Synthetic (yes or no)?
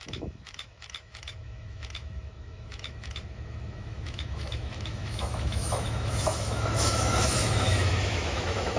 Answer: yes